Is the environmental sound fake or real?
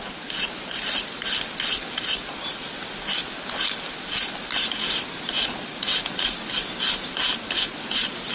real